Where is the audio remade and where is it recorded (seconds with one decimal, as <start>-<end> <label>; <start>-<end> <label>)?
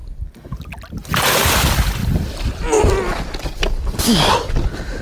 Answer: 0.0-5.0 recorded